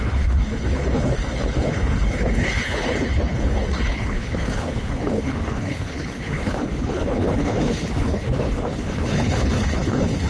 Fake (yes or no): yes